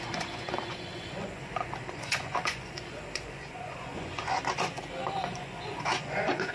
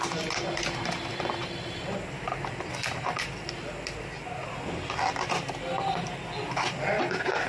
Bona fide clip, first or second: second